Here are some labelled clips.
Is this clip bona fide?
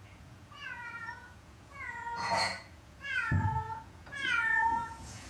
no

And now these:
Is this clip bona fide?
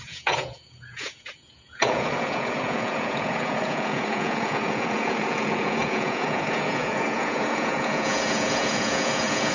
no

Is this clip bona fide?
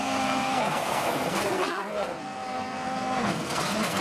no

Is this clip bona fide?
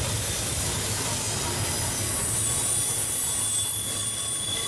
yes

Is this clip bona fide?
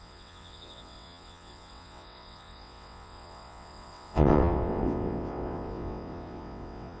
no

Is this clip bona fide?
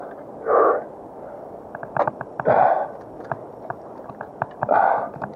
yes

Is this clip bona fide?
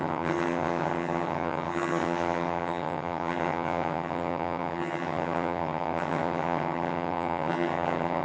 no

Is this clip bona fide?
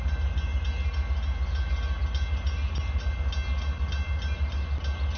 yes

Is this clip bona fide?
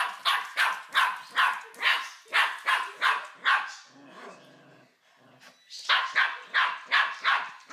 yes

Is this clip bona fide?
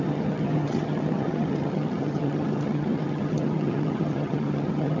no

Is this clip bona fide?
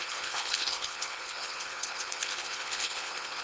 no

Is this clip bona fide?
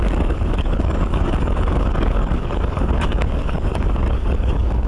no